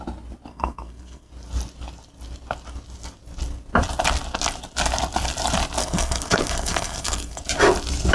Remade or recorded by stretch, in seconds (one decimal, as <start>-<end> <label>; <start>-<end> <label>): 0.0-0.5 recorded; 0.5-1.3 remade; 1.3-5.8 recorded; 5.8-7.4 remade; 7.4-8.1 recorded